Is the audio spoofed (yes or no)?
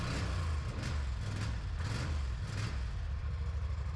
no